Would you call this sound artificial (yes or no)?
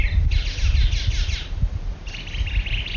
no